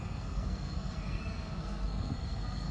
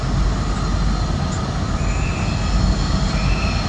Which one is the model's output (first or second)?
first